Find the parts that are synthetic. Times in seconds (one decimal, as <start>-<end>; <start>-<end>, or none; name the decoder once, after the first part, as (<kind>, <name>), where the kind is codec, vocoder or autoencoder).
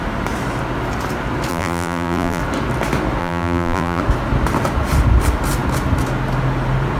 1.5-2.4 (vocoder, BigVGAN v2); 3.2-4.0